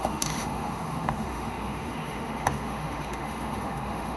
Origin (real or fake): fake